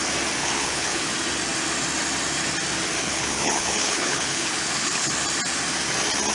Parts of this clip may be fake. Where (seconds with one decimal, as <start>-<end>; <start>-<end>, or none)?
0.4-1.1; 3.0-5.1